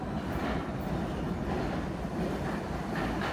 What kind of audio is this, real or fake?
real